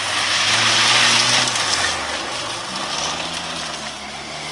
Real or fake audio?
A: real